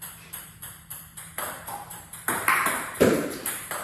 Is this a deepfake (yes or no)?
yes